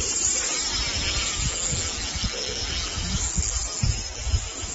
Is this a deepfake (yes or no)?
no